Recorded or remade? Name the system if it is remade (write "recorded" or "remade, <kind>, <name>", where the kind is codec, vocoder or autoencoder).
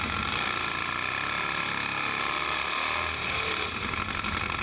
recorded